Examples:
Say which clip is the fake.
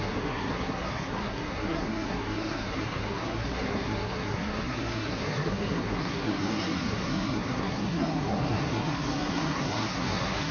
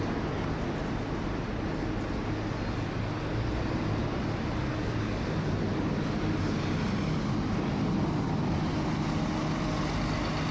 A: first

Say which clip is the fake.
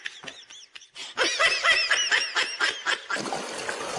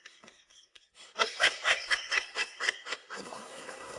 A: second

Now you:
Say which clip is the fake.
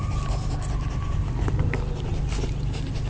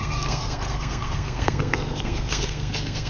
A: second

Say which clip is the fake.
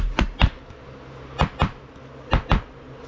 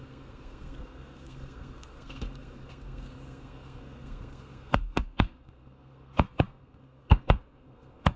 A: second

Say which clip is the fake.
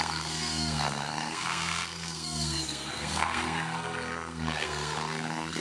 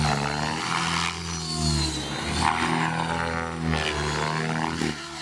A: first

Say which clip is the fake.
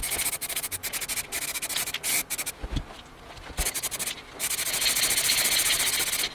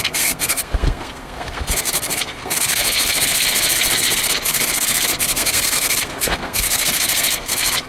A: second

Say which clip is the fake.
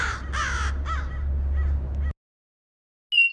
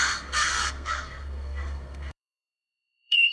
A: second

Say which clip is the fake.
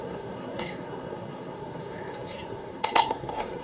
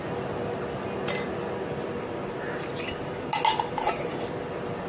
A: first